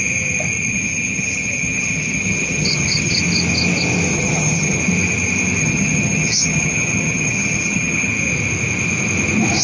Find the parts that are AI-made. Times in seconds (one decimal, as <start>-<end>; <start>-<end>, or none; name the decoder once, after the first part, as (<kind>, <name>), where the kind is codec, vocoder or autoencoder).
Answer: 0.7-3.2 (vocoder, HiFi-GAN); 4.1-4.8; 5.6-8.1